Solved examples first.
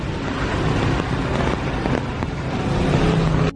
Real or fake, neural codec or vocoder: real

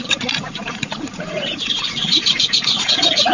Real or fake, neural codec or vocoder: fake, vocoder, Vocos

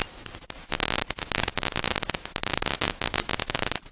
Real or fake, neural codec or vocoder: real